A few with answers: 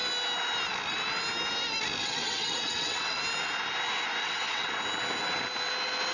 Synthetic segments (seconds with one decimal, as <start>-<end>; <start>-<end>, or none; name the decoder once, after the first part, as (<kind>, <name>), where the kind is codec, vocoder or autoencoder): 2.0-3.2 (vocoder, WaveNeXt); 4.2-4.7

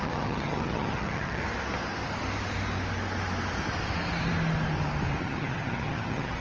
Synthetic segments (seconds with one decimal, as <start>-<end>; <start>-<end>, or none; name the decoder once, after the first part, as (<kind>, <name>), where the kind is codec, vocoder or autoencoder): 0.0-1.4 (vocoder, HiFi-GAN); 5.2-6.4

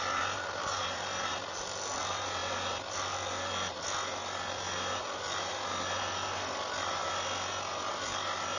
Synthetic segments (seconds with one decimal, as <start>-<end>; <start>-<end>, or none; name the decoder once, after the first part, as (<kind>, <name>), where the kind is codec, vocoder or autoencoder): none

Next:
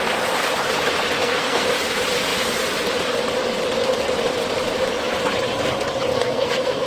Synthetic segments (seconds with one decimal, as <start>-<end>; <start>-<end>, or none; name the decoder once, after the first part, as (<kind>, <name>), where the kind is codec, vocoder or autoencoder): 1.2-1.7 (codec, SNAC); 6.1-6.9

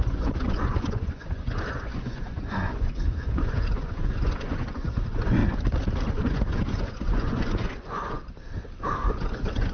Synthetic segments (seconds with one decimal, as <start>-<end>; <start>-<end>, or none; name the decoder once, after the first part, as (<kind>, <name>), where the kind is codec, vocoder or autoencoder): 0.0-5.4 (vocoder, Vocos); 6.1-8.2; 8.9-9.7